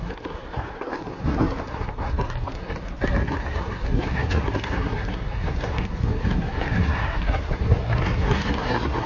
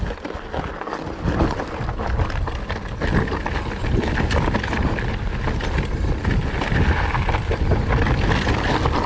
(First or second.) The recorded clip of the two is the second